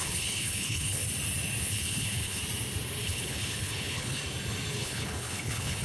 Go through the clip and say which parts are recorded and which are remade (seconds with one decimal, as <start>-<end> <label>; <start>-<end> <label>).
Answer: 0.0-1.0 remade; 1.0-1.6 recorded; 1.6-2.4 remade; 2.4-3.0 recorded; 3.0-4.2 remade; 4.2-4.7 recorded; 4.7-5.8 remade